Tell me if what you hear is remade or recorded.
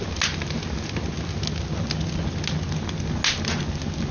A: recorded